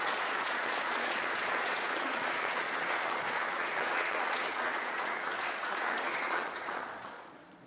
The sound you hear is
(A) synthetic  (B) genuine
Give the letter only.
A